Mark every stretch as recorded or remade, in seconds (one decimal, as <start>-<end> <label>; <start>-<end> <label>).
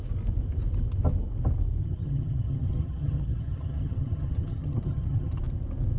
0.0-1.8 recorded; 1.8-5.4 remade; 5.4-6.0 recorded